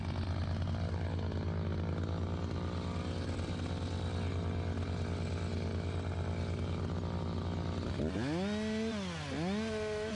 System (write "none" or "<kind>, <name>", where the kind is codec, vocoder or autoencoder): none